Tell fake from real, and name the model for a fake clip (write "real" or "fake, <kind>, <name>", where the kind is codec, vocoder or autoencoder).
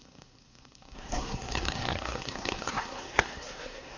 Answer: fake, codec, SNAC